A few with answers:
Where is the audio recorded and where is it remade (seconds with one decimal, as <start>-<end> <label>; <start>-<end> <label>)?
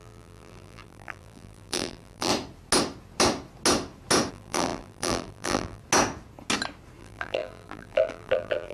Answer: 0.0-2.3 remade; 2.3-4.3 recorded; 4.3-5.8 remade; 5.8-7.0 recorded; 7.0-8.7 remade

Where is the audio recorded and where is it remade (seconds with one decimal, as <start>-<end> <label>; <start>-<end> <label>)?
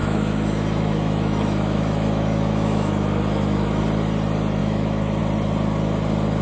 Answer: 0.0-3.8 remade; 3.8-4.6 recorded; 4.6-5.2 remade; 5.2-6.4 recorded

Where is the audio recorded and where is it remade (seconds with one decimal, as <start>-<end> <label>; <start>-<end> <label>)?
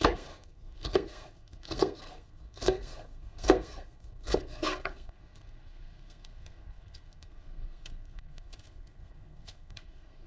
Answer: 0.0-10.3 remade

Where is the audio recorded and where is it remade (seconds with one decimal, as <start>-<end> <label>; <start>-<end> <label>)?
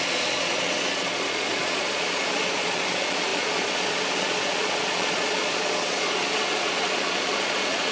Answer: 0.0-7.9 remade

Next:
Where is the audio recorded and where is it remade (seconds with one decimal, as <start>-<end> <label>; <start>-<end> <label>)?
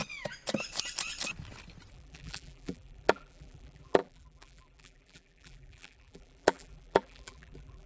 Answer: 0.0-1.9 recorded; 1.9-7.9 remade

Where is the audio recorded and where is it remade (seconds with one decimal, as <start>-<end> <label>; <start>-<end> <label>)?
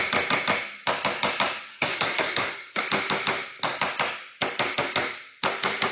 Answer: 0.0-1.7 recorded; 1.7-2.8 remade; 2.8-5.9 recorded